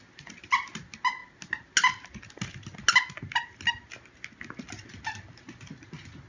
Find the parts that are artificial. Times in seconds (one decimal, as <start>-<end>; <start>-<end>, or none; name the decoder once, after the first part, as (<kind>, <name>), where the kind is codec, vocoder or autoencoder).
none